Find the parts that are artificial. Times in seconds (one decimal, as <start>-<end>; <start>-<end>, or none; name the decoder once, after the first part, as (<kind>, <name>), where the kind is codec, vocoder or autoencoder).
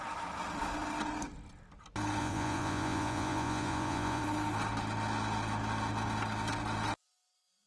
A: 2.2-4.2 (vocoder, Vocos)